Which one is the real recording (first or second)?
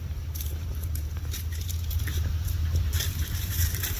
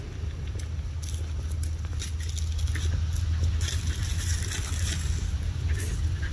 second